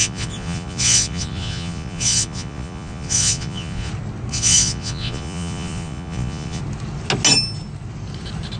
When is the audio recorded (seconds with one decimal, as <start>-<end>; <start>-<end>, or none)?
3.9-4.3; 6.6-8.6